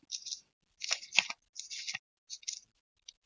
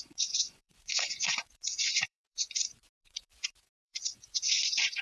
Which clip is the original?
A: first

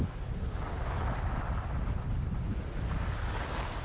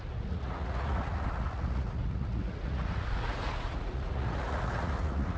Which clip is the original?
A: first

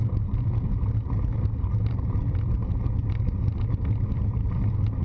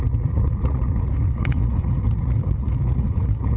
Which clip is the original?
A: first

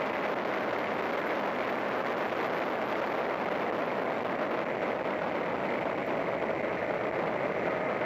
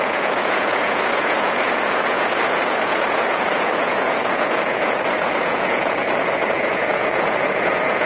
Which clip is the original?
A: first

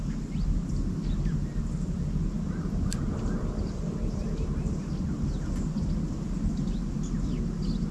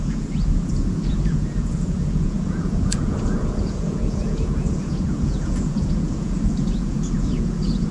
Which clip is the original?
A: first